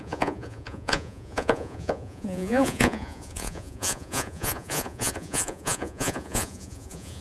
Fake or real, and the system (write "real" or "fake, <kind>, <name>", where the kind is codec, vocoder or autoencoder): fake, vocoder, Vocos